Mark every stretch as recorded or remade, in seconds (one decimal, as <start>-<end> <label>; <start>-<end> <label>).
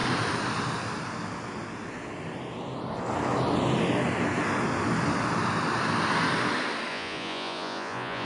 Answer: 0.0-6.9 recorded; 6.9-8.3 remade